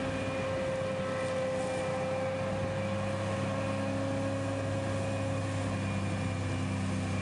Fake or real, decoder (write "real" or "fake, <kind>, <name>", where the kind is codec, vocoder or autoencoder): real